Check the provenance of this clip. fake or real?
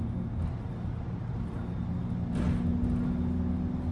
real